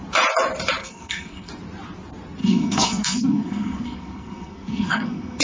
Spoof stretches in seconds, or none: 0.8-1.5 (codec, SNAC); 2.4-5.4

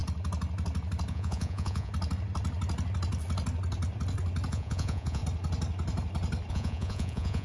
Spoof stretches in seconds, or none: 1.1-1.9 (vocoder, Vocos); 4.5-5.2; 6.5-7.4

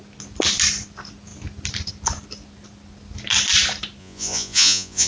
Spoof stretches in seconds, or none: 4.0-5.1 (vocoder, Vocos)

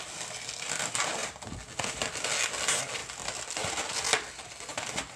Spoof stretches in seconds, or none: none

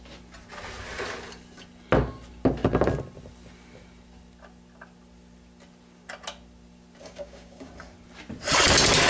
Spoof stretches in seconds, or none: 7.0-7.7 (codec, DAC)

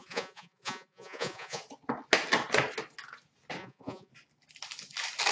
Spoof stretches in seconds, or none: 0.0-1.6 (vocoder, Vocos); 3.6-4.1

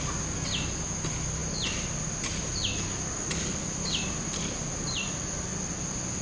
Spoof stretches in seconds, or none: none